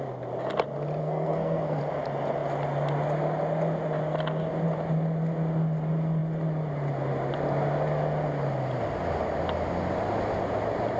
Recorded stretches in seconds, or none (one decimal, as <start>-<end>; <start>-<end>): 0.0-1.0; 1.8-11.0